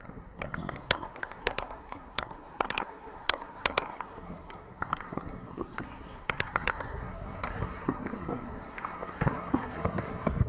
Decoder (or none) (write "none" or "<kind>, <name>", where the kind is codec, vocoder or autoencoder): codec, SNAC